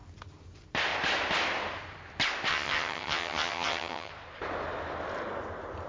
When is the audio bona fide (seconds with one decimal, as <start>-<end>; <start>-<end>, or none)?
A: 0.0-2.5; 4.1-5.9